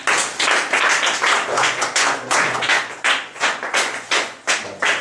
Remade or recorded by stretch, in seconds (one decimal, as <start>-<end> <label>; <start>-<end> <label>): 0.0-1.5 recorded; 1.5-4.5 remade; 4.5-5.0 recorded